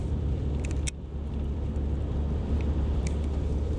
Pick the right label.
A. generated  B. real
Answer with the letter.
A